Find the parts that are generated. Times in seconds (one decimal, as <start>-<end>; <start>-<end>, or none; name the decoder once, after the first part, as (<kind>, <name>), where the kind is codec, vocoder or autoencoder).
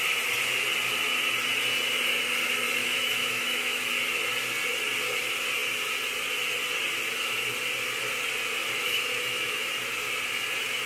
2.8-3.8 (autoencoder, DAC-VAE); 8.6-9.7